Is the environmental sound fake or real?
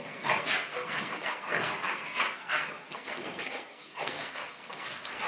fake